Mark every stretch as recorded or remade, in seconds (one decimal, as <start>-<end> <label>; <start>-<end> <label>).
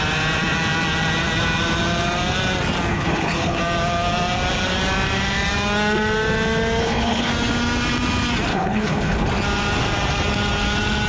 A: 0.0-2.9 recorded; 2.9-3.6 remade; 3.6-6.8 recorded; 6.8-7.3 remade; 7.3-8.5 recorded; 8.5-9.3 remade; 9.3-11.1 recorded